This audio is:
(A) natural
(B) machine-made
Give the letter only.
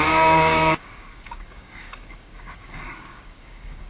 B